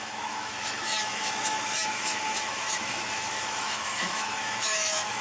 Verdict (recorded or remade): remade